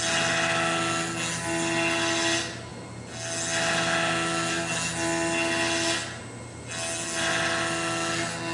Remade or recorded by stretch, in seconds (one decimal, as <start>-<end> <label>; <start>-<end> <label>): 0.0-8.5 recorded